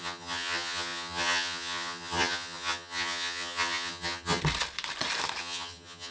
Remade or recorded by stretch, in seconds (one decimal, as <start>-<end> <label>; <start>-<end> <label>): 0.0-4.4 remade; 4.4-5.4 recorded; 5.4-6.1 remade

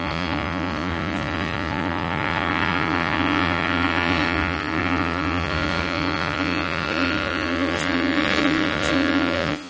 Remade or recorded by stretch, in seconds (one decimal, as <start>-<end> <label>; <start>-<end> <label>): 0.0-9.7 remade

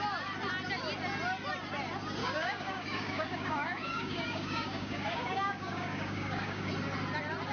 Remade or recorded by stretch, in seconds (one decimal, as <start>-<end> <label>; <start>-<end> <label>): 0.0-2.2 recorded; 2.2-6.7 remade; 6.7-7.5 recorded

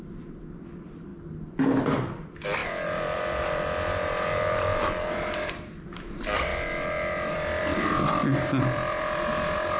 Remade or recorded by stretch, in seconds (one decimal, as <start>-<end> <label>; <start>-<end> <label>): 0.0-1.1 remade; 1.1-1.9 recorded; 1.9-6.5 remade; 6.5-7.3 recorded; 7.3-9.8 remade

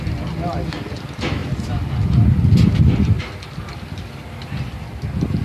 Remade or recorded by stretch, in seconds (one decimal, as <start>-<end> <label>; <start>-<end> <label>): 0.0-5.4 recorded

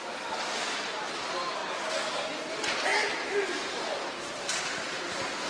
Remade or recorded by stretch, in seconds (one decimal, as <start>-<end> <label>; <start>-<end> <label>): 0.0-2.9 recorded; 2.9-5.0 remade; 5.0-5.5 recorded